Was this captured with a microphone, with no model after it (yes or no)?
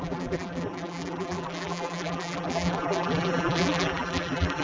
no